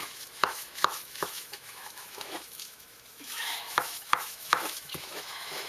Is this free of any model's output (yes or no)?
no